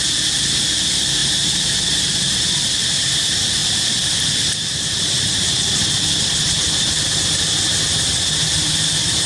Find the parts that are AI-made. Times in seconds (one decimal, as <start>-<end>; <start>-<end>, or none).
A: 0.0-3.6; 6.2-9.3